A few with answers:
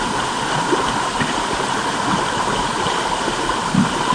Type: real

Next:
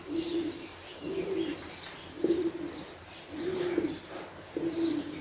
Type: fake